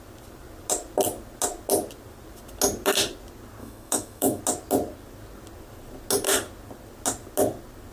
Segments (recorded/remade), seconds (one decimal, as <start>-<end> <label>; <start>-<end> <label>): 0.0-3.6 recorded; 3.6-4.4 remade; 4.4-7.9 recorded